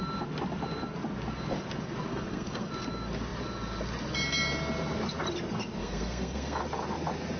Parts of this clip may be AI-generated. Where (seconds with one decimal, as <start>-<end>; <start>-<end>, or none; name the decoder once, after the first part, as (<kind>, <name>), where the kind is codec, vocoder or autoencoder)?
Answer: 2.1-2.7 (codec, SNAC); 5.8-6.6